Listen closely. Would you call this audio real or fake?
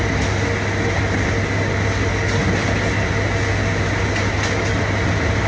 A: real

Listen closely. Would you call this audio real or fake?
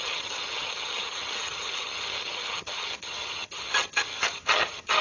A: fake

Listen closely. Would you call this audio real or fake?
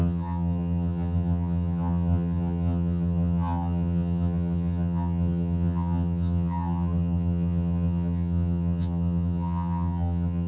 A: fake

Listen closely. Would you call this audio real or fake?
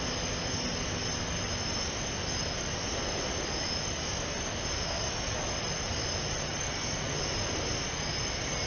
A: real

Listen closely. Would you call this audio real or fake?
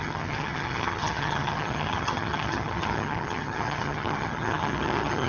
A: fake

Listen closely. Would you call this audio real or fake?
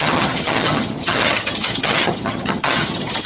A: fake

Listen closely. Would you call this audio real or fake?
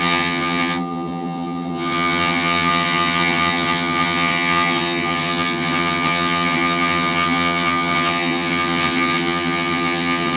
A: fake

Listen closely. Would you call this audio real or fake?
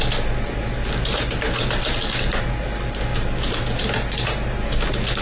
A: real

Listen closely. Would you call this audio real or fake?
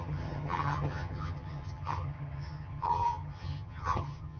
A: fake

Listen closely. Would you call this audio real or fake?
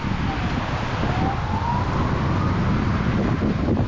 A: real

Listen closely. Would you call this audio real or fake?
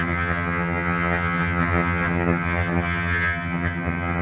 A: fake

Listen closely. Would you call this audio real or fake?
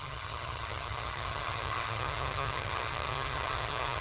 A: fake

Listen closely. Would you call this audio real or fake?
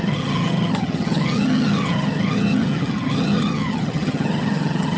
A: fake